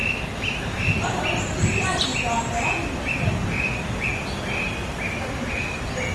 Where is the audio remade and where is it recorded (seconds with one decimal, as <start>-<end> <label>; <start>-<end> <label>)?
0.0-2.1 remade; 2.1-5.5 recorded; 5.5-6.1 remade